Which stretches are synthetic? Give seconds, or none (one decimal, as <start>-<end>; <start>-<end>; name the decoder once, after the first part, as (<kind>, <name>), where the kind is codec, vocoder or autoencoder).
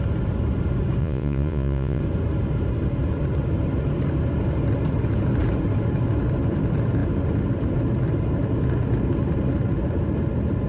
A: 1.0-2.0 (vocoder, Vocos)